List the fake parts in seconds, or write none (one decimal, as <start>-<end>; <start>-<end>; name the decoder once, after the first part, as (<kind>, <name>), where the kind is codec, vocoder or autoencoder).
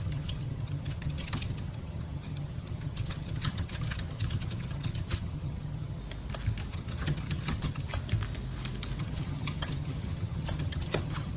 0.0-6.0 (vocoder, HiFi-GAN); 6.7-7.9; 9.0-11.4